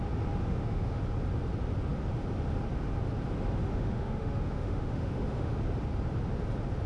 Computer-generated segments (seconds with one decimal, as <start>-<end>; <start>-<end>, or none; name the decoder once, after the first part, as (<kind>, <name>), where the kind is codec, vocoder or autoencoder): 0.4-1.0 (autoencoder, DAC-VAE); 3.6-5.5